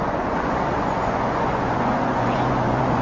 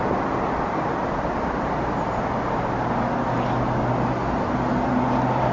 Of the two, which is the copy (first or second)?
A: first